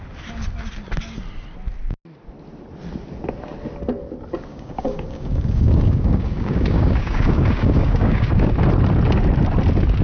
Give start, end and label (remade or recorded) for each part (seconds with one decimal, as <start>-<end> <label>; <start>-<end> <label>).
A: 0.0-4.5 recorded; 4.5-8.5 remade; 8.5-10.0 recorded